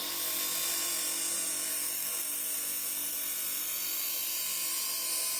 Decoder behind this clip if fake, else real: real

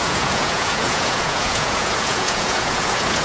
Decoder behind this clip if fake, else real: fake, vocoder, Vocos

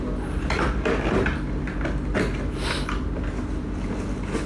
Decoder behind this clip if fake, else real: real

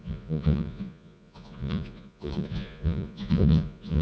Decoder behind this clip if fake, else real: fake, vocoder, Vocos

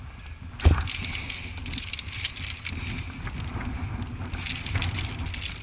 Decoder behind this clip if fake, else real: real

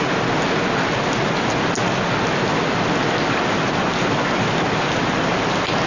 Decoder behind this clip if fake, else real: real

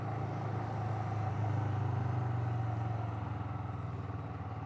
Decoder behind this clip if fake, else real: real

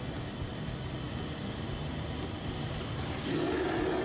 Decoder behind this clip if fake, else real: real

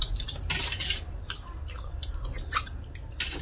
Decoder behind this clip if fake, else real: real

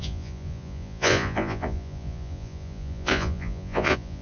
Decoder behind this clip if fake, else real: fake, vocoder, Vocos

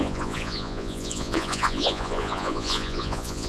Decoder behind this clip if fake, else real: fake, vocoder, Vocos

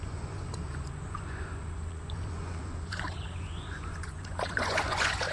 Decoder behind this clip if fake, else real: fake, vocoder, Vocos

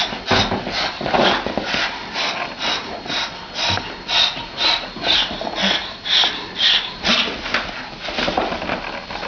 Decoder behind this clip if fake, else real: real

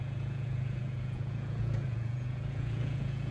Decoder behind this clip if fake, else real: fake, vocoder, Vocos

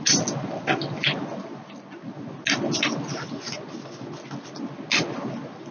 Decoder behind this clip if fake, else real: real